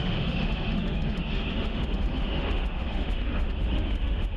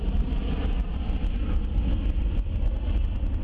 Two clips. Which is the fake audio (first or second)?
first